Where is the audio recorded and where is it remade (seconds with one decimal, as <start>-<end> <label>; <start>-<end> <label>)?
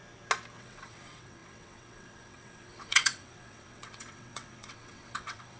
0.0-0.6 recorded; 0.6-5.6 remade